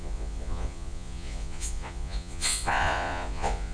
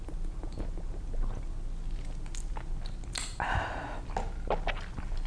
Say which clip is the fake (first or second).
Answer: first